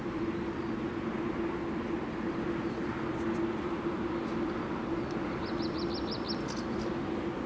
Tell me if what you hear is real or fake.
real